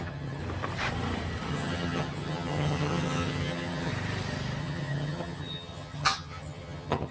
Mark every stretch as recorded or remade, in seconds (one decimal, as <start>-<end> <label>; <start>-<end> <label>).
0.0-0.4 remade; 0.4-1.5 recorded; 1.5-3.9 remade; 3.9-4.6 recorded; 4.6-7.1 remade